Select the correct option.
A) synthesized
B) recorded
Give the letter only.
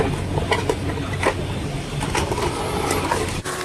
B